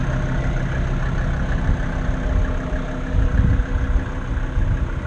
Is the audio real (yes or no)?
yes